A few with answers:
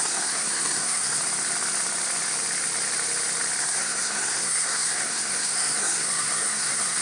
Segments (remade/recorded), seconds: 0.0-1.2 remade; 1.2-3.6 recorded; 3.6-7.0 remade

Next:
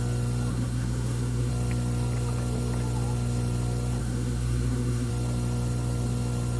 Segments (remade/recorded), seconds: 0.0-0.5 recorded; 0.5-1.5 remade; 1.5-4.0 recorded; 4.0-5.1 remade; 5.1-6.6 recorded

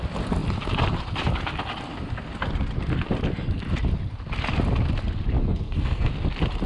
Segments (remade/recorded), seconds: 0.0-5.4 recorded; 5.4-6.1 remade; 6.1-6.7 recorded

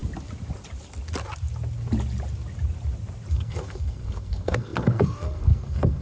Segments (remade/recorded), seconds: 0.0-3.3 recorded; 3.3-6.0 remade

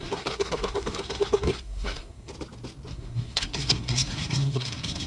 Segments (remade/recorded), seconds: 0.0-2.3 remade; 2.3-2.9 recorded; 2.9-5.1 remade

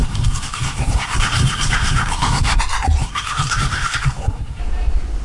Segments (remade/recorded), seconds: 0.0-2.6 remade; 2.6-3.0 recorded; 3.0-4.6 remade; 4.6-5.2 recorded

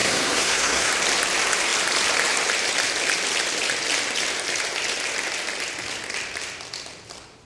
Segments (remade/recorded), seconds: 0.0-0.9 remade; 0.9-7.4 recorded

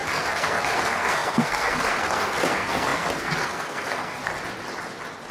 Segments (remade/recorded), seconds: 0.0-4.3 remade; 4.3-5.3 recorded